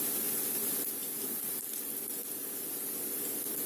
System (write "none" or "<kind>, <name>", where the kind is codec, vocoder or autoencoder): none